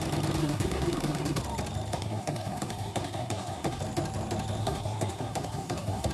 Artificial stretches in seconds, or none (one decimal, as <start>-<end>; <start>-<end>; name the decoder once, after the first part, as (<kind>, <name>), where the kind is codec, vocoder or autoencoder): 0.4-1.4 (codec, SNAC); 1.9-3.8; 4.6-6.1